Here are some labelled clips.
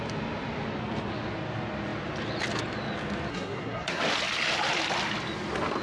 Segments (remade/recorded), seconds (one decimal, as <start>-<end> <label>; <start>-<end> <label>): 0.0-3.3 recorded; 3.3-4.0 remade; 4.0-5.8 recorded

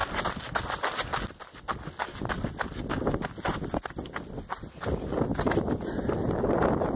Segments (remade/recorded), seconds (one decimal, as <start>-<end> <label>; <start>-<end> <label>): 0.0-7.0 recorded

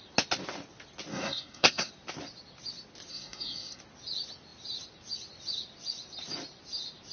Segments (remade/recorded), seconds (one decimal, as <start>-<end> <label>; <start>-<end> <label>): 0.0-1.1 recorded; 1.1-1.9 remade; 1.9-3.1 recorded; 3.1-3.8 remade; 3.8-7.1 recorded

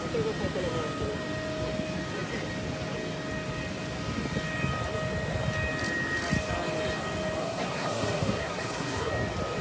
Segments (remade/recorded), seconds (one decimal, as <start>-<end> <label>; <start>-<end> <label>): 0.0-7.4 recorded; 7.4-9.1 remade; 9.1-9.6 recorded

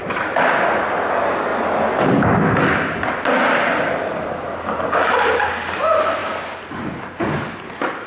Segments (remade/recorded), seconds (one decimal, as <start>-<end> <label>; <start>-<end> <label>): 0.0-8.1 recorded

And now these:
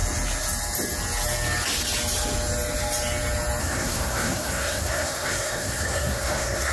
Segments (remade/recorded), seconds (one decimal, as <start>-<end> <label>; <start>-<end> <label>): 0.0-3.6 recorded; 3.6-6.7 remade

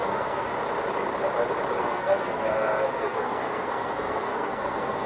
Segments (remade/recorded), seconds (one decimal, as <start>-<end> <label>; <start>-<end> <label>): 0.0-0.5 remade; 0.5-1.8 recorded; 1.8-5.1 remade